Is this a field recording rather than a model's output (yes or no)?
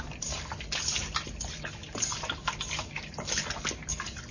yes